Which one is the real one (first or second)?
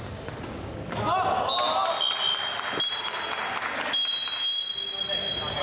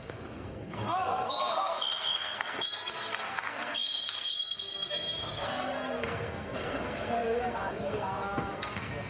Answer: first